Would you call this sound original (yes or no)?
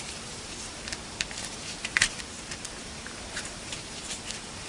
no